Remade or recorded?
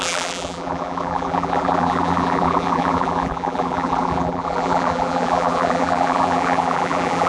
remade